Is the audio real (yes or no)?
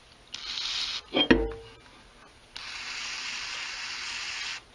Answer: yes